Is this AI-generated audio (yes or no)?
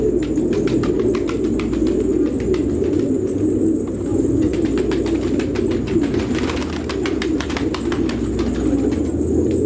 no